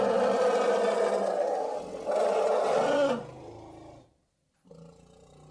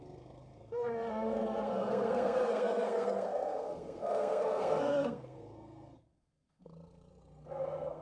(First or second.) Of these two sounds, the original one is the first